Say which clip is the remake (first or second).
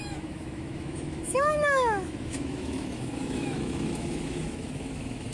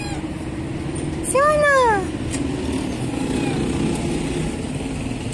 first